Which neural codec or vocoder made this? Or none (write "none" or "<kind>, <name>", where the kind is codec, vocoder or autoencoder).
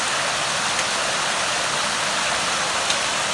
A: none